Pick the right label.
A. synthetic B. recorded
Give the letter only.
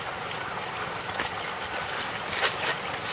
B